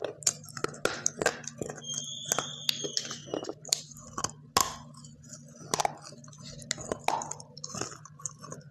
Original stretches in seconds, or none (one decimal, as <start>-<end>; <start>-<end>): 0.0-3.2; 3.9-8.7